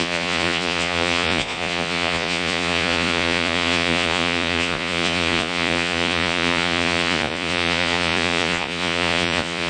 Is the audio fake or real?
fake